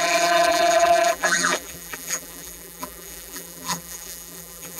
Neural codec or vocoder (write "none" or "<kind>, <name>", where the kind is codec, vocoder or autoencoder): vocoder, BigVGAN v2